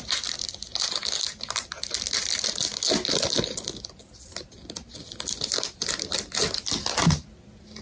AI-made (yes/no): no